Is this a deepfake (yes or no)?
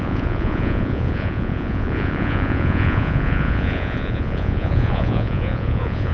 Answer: yes